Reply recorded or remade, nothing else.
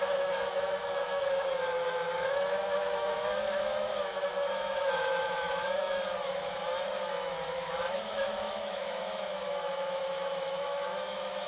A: remade